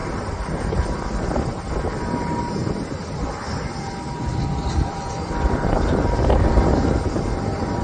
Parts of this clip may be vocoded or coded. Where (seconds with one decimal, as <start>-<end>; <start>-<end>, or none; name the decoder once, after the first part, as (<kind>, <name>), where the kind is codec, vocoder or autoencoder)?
0.0-1.7 (vocoder, BigVGAN v2)